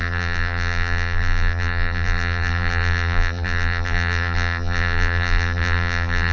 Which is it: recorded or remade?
remade